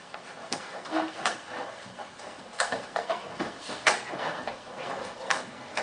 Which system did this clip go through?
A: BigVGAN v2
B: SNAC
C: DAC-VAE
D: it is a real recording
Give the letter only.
B